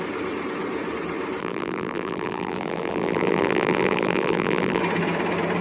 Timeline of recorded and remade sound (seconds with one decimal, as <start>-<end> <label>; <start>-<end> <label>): 0.0-1.4 recorded; 1.4-4.8 remade; 4.8-5.6 recorded